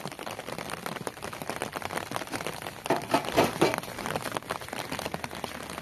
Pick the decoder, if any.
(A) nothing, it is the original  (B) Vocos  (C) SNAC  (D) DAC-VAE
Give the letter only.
A